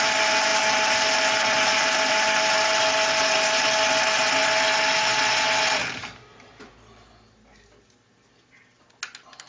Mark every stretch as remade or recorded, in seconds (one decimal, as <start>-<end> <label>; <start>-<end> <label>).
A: 0.0-9.5 recorded